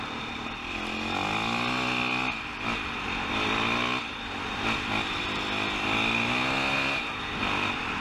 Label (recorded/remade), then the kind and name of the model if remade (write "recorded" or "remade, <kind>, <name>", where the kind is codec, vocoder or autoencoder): recorded